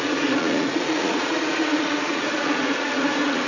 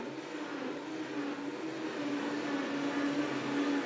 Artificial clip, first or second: first